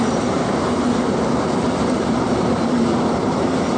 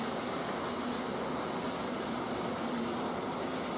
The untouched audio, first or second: second